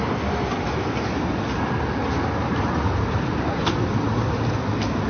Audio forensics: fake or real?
real